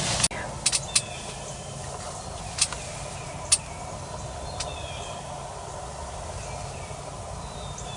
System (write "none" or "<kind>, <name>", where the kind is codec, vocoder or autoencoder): none